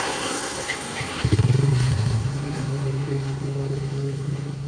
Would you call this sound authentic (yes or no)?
no